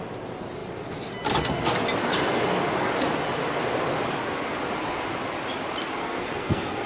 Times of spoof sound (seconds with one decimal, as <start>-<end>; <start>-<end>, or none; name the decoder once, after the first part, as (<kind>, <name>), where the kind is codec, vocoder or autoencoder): 6.0-6.9 (codec, SNAC)